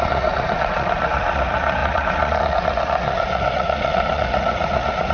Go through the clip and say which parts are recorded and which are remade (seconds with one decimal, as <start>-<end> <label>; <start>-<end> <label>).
0.0-5.1 remade